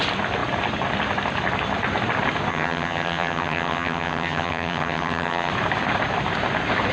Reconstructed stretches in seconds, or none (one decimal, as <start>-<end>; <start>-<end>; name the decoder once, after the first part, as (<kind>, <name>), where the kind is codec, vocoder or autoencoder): 2.5-5.5 (vocoder, HiFi-GAN)